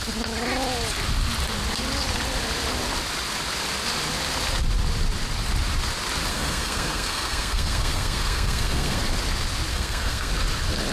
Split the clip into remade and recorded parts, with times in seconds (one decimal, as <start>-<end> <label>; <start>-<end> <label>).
0.0-6.3 recorded; 6.3-9.0 remade; 9.0-9.7 recorded; 9.7-10.3 remade; 10.3-10.9 recorded